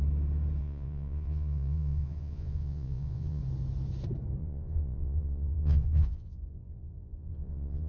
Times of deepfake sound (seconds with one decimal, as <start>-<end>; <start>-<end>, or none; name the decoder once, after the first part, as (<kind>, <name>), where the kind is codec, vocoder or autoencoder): 0.6-3.4 (vocoder, Vocos); 4.4-7.9